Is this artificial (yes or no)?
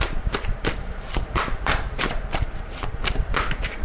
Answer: yes